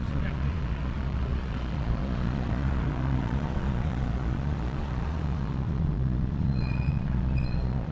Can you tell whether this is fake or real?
fake